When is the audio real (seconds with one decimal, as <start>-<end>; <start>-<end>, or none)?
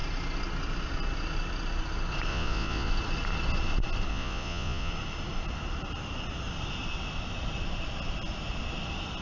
0.0-2.3; 2.9-4.1; 4.9-9.2